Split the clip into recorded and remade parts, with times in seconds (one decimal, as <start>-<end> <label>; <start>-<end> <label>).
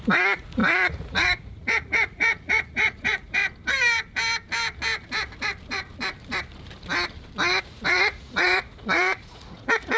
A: 0.0-3.4 remade; 3.4-7.6 recorded; 7.6-10.0 remade